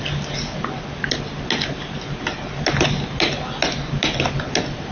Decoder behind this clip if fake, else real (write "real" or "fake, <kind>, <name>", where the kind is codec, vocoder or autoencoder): real